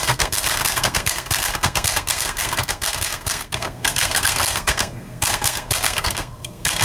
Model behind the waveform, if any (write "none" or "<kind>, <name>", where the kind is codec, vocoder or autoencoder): codec, SNAC